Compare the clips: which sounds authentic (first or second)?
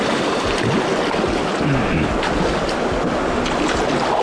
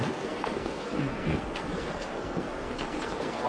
first